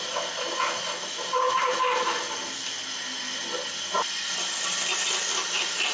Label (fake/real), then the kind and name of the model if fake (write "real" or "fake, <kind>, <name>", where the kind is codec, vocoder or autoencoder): real